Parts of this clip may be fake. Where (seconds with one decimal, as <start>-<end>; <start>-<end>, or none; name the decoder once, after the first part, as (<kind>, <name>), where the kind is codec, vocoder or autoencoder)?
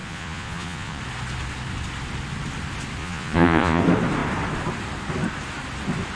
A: 0.0-1.0 (vocoder, Vocos); 3.0-3.8